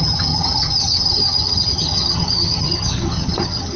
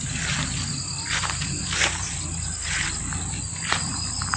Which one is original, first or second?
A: second